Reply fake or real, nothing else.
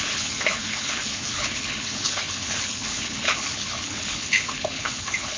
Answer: fake